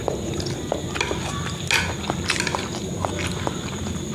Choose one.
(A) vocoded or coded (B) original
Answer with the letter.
B